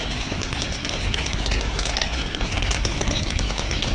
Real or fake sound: fake